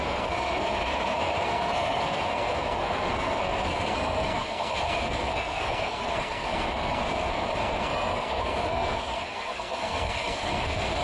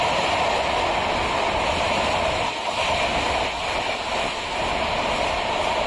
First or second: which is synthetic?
first